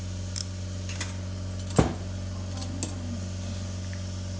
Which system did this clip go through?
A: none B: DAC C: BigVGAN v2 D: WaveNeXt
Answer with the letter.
A